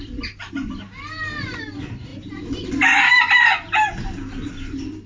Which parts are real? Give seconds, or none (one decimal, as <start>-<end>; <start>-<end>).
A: 2.1-2.7